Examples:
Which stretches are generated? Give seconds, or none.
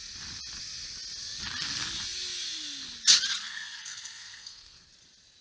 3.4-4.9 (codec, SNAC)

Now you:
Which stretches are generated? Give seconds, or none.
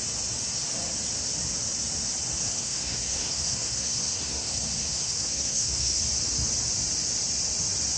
2.4-6.0 (codec, SNAC)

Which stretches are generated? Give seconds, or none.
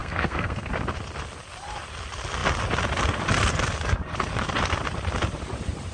0.0-0.7 (codec, SNAC)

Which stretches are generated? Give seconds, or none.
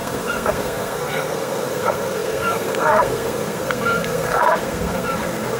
0.0-5.6 (codec, SNAC)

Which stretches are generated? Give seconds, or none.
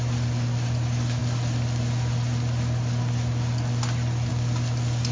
none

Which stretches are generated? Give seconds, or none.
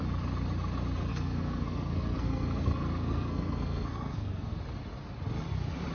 1.1-4.6 (codec, SNAC)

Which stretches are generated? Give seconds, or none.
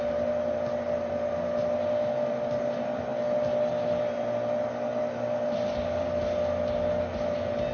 none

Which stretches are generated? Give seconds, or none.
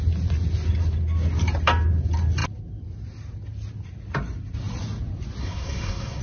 5.4-6.2 (codec, SNAC)